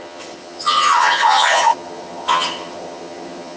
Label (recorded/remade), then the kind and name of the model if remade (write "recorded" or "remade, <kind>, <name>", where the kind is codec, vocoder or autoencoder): remade, vocoder, HiFi-GAN